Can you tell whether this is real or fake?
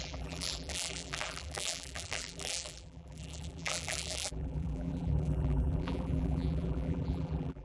fake